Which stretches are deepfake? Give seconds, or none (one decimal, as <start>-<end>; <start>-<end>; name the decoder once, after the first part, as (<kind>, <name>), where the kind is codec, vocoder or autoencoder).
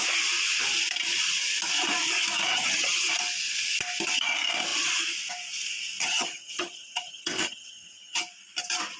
2.5-3.1 (vocoder, HiFi-GAN); 6.0-8.2